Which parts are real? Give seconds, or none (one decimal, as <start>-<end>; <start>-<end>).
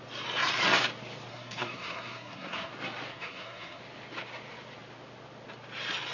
0.0-1.3; 2.7-3.1; 3.8-6.1